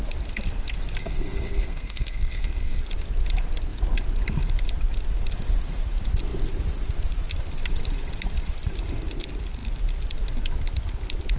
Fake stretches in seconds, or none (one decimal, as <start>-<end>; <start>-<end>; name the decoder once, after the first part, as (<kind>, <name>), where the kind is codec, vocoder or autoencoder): 1.0-2.8 (codec, SNAC)